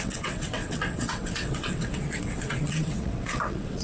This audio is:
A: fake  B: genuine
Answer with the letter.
A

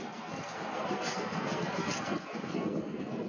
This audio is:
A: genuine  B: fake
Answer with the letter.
B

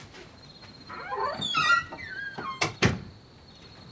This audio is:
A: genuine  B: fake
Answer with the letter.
A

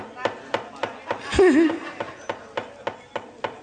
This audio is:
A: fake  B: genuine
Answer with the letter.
B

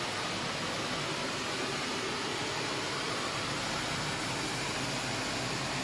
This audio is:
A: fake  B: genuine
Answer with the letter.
B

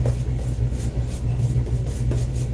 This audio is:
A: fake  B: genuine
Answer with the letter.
B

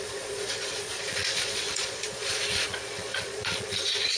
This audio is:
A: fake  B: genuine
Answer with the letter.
A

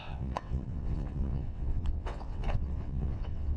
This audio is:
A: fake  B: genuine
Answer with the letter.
A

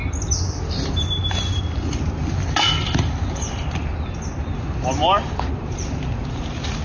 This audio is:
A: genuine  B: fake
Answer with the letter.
A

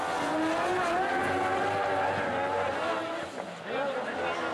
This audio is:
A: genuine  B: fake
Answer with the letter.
A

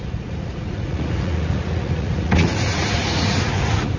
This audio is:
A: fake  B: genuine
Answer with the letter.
A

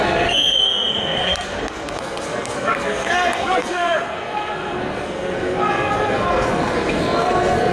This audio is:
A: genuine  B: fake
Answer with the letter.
B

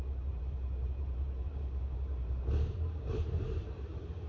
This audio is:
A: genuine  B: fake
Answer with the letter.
B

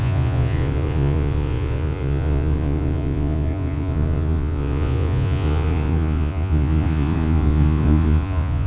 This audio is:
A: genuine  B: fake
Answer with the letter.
B